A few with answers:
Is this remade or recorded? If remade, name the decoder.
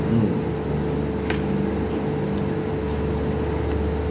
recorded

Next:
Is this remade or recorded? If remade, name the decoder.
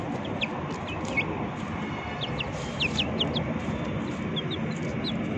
recorded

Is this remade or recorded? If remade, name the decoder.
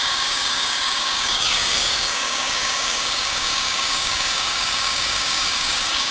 remade, codec, DAC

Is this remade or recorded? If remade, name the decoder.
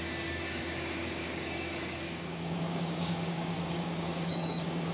remade, codec, DAC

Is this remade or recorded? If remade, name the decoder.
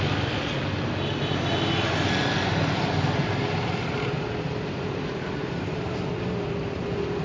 recorded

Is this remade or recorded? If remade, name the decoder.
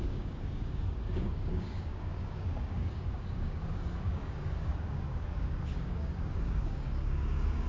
remade, codec, DAC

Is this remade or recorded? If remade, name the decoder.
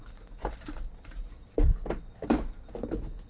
recorded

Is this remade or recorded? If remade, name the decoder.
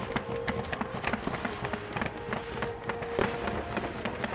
recorded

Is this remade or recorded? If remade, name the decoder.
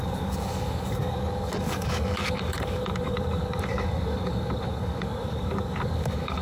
remade, codec, DAC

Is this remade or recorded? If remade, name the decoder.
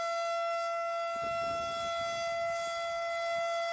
recorded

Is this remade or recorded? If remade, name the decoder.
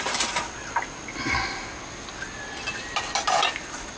recorded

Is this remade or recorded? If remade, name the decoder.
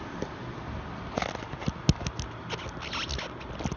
recorded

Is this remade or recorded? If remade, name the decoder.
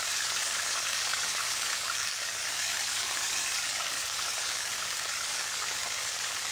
remade, codec, DAC